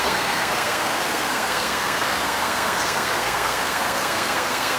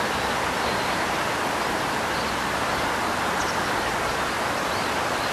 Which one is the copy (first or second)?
first